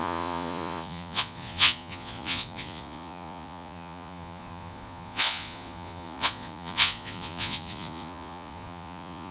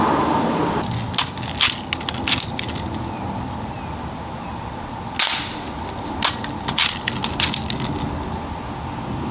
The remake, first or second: first